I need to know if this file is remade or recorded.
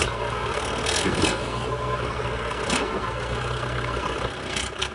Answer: remade